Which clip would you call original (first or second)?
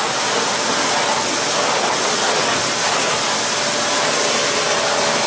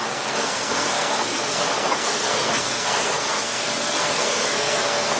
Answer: first